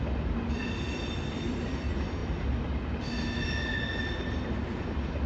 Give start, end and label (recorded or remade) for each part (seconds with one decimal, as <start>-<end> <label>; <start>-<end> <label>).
0.0-5.3 recorded